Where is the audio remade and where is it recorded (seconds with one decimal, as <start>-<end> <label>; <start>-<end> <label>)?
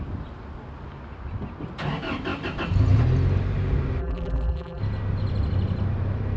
0.0-4.0 recorded; 4.0-4.8 remade; 4.8-6.4 recorded